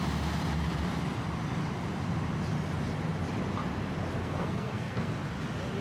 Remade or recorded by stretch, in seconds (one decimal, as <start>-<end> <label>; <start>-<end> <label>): 0.0-4.2 recorded; 4.2-5.1 remade; 5.1-5.8 recorded